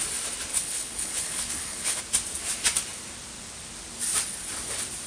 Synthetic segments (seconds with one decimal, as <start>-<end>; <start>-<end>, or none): 0.5-2.0